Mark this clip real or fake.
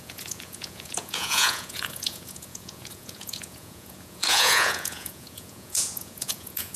fake